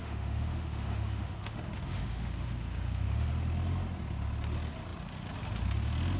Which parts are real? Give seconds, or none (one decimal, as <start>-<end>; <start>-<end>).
3.3-6.2